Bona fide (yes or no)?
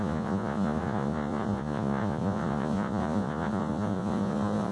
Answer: no